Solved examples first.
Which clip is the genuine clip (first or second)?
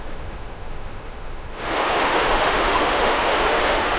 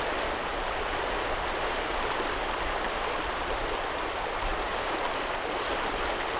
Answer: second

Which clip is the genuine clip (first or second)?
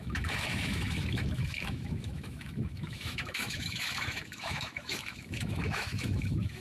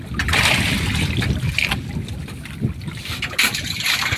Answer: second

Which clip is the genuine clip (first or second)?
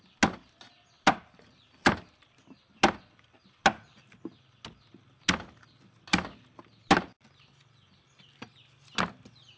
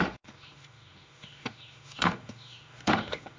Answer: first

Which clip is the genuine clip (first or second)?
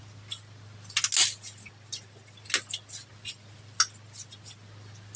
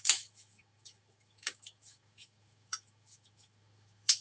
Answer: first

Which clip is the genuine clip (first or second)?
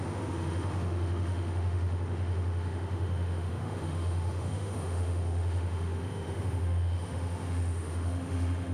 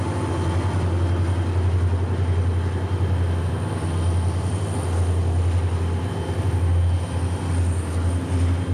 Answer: second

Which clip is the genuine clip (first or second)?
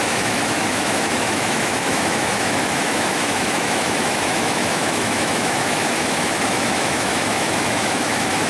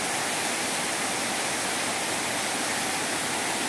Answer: second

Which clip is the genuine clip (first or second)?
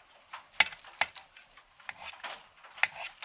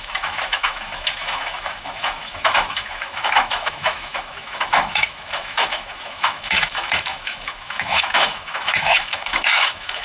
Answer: first